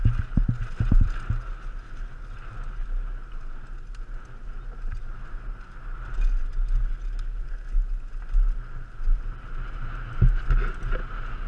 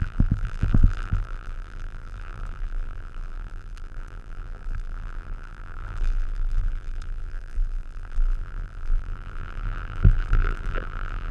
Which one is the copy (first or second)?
second